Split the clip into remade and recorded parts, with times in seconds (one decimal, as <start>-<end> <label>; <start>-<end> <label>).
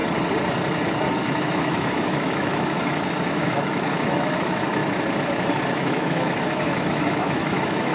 0.0-1.2 recorded; 1.2-4.8 remade; 4.8-5.7 recorded; 5.7-7.9 remade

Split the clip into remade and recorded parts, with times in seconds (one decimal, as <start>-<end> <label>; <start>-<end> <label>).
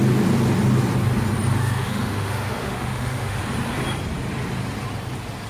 0.0-1.6 recorded; 1.6-3.4 remade; 3.4-5.5 recorded